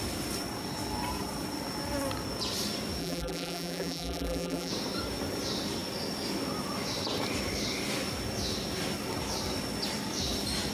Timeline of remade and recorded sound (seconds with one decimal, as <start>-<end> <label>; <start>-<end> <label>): 0.0-3.0 recorded; 3.0-4.7 remade; 4.7-10.7 recorded